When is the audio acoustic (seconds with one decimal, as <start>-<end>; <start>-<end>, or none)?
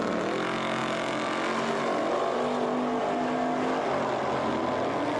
0.0-5.2